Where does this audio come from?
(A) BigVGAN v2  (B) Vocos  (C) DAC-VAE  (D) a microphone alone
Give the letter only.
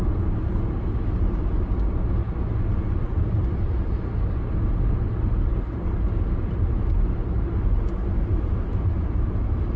D